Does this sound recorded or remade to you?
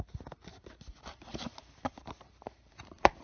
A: remade